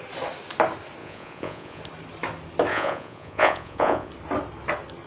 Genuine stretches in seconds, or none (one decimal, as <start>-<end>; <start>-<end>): 0.0-1.0; 1.8-2.7; 4.1-5.1